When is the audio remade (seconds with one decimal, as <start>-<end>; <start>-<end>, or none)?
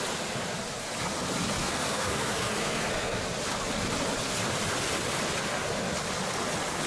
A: 1.6-3.2